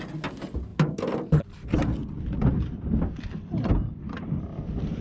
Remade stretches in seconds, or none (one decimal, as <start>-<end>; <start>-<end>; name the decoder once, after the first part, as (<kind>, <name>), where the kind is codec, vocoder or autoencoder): none